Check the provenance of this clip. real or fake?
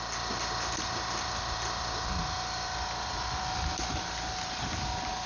real